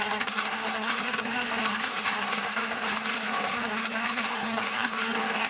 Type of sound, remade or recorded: remade